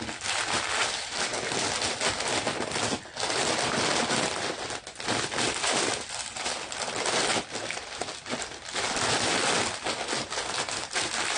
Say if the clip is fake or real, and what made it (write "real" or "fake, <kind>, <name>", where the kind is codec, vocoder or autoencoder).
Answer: real